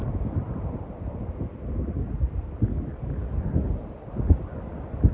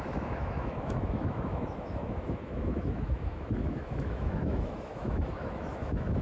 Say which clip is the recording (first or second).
first